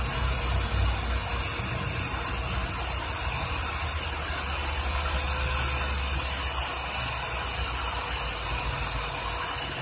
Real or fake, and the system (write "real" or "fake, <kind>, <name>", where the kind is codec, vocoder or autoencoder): real